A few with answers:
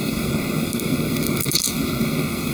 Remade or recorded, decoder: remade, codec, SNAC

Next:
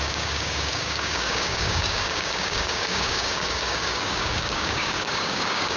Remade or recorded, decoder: remade, codec, DAC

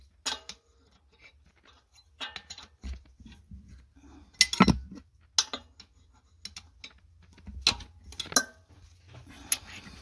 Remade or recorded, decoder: recorded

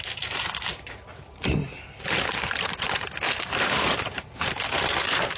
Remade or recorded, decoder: remade, vocoder, BigVGAN v2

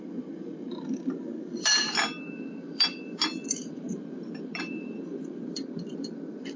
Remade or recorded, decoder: remade, vocoder, BigVGAN v2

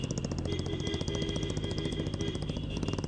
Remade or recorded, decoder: recorded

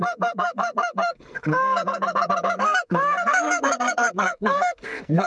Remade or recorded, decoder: remade, codec, SNAC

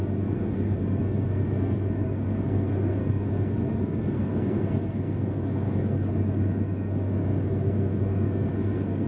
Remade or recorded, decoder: remade, codec, SNAC